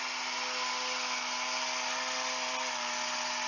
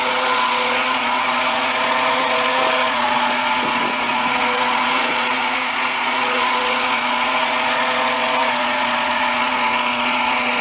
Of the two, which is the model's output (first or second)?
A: second